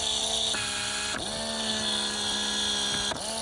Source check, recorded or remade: recorded